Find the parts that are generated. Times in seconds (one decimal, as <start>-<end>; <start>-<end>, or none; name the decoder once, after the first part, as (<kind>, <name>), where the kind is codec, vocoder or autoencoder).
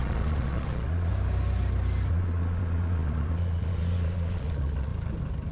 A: 0.0-1.1 (vocoder, Vocos); 2.1-4.9